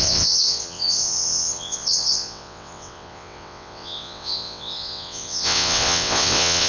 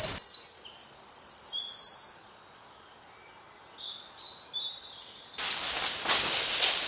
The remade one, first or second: first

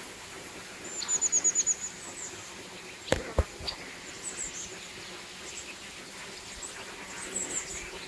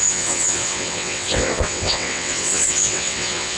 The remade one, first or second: second